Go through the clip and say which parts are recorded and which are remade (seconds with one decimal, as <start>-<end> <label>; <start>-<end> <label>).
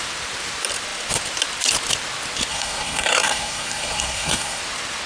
0.0-2.5 recorded; 2.5-4.6 remade; 4.6-5.1 recorded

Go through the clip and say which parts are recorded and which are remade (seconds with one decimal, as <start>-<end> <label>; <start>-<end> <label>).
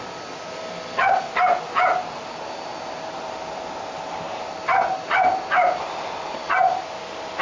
0.0-7.4 recorded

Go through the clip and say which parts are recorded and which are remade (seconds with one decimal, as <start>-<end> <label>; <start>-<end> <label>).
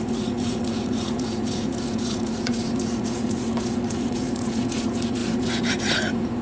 0.0-6.4 remade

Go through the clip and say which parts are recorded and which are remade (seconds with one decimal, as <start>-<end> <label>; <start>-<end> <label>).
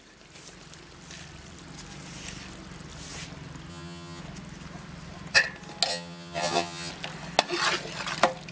0.0-3.7 recorded; 3.7-4.2 remade; 4.2-5.9 recorded; 5.9-6.9 remade; 6.9-8.5 recorded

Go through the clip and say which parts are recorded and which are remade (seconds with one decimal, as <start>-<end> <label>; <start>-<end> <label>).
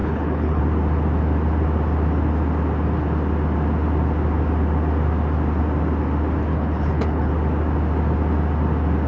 0.0-0.6 remade; 0.6-6.5 recorded; 6.5-7.3 remade; 7.3-9.1 recorded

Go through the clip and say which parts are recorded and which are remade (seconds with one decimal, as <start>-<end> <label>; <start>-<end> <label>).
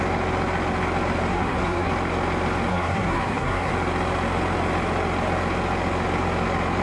0.0-1.3 recorded; 1.3-1.9 remade; 1.9-2.7 recorded; 2.7-3.7 remade; 3.7-6.8 recorded